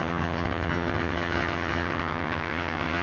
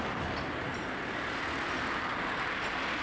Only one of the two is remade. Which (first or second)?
first